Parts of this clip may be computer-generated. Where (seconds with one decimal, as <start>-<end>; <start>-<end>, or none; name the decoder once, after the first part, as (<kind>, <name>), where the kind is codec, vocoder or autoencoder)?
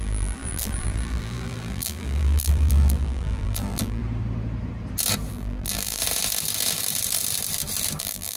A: 0.0-4.0 (vocoder, BigVGAN v2); 5.3-6.0; 8.0-8.4